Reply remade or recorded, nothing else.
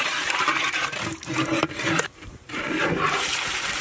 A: remade